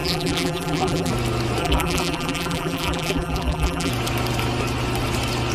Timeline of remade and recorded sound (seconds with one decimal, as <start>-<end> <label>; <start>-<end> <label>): 0.0-1.1 remade; 1.1-1.6 recorded; 1.6-3.9 remade; 3.9-5.5 recorded